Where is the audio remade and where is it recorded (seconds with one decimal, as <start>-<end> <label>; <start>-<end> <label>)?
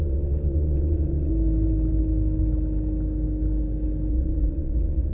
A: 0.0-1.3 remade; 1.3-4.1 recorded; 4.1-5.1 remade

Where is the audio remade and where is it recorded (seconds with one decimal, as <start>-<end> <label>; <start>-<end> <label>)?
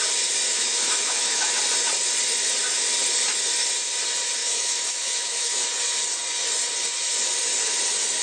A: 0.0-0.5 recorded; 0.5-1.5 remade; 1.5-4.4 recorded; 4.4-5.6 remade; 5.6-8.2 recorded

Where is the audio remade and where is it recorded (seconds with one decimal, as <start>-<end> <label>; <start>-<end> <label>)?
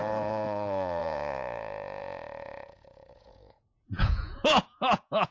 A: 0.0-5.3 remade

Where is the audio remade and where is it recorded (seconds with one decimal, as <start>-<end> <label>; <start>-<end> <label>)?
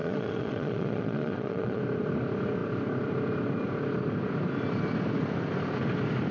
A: 0.0-1.8 remade; 1.8-6.3 recorded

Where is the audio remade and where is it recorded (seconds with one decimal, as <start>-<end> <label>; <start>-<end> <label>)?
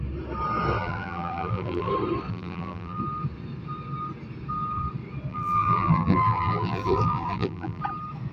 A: 0.0-0.8 recorded; 0.8-1.9 remade; 1.9-2.3 recorded; 2.3-3.0 remade; 3.0-5.3 recorded; 5.3-7.8 remade; 7.8-8.3 recorded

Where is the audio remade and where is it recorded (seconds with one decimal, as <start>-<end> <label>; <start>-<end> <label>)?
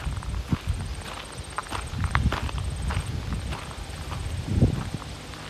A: 0.0-1.6 recorded; 1.6-2.3 remade; 2.3-5.5 recorded